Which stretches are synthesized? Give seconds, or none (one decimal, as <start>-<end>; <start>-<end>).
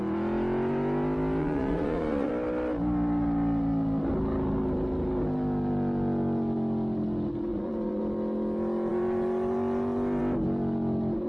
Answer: 1.4-2.3; 7.5-8.0